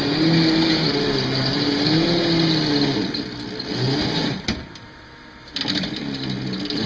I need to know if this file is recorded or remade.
recorded